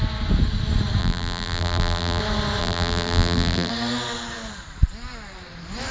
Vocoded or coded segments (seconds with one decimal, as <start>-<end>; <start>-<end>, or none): 1.0-2.2; 2.6-3.7